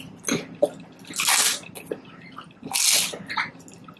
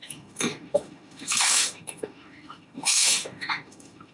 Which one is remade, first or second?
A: second